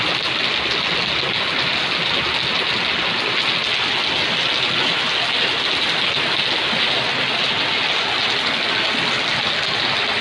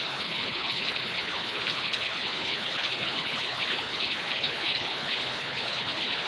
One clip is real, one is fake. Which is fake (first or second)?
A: second